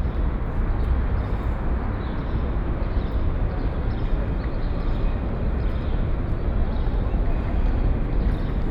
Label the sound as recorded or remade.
recorded